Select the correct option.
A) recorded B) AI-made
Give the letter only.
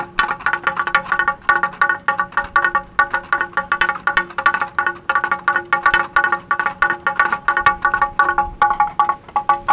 A